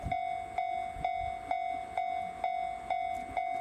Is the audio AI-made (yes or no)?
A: no